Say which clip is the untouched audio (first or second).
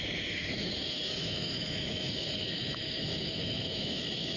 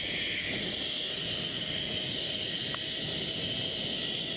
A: second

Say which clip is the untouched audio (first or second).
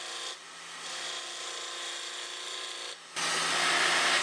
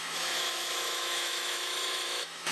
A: first